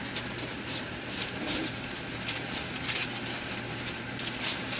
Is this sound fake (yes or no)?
yes